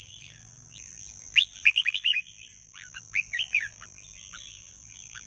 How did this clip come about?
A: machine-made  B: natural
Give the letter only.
A